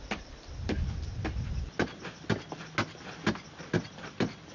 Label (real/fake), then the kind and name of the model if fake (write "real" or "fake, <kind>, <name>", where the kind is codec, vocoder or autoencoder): real